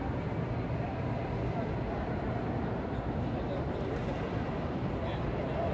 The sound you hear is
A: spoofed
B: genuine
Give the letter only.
B